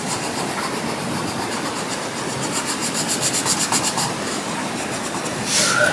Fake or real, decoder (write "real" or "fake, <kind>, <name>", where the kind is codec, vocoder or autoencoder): real